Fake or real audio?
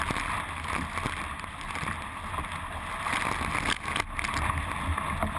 real